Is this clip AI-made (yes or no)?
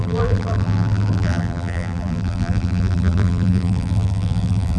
yes